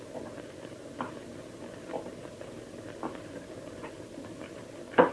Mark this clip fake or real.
real